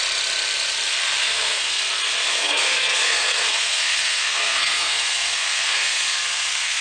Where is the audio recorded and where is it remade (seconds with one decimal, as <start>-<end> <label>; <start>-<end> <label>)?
0.0-1.2 recorded; 1.2-1.8 remade; 1.8-2.3 recorded; 2.3-6.8 remade